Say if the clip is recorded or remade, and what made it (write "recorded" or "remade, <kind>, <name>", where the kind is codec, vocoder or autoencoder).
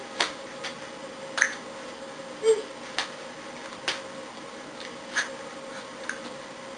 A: recorded